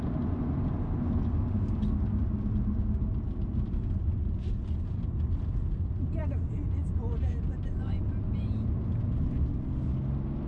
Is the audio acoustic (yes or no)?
yes